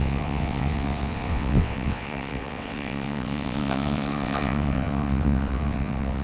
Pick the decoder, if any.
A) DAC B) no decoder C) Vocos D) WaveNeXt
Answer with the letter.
D